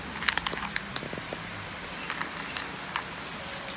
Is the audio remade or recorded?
recorded